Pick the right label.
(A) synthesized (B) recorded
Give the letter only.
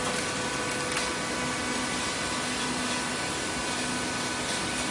B